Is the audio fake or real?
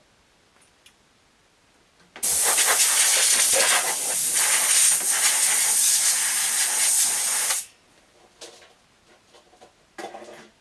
real